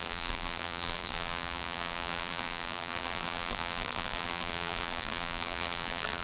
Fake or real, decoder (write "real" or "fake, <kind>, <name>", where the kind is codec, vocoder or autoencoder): fake, vocoder, BigVGAN v2